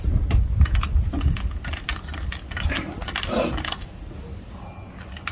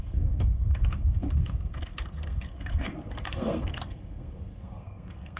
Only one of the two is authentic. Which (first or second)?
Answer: first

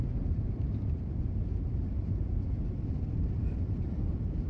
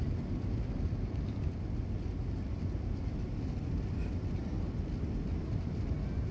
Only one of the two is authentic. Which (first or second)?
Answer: second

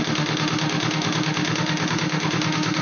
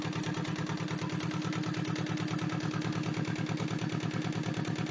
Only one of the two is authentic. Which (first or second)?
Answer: second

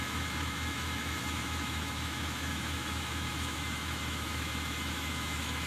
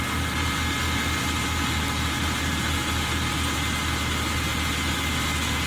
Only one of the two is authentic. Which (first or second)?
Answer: second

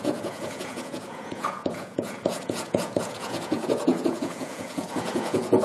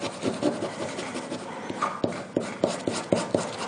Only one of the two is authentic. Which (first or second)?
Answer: second